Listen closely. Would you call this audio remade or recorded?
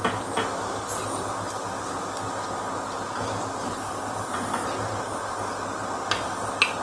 recorded